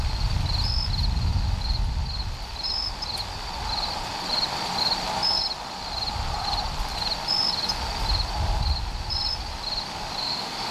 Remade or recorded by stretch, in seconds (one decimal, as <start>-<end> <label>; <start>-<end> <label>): 0.0-10.2 recorded; 10.2-10.7 remade